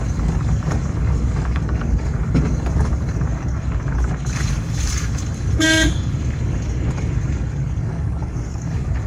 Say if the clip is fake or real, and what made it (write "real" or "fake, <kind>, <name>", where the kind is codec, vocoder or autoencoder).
fake, codec, DAC